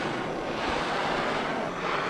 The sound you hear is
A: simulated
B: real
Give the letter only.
B